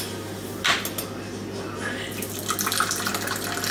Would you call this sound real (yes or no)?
yes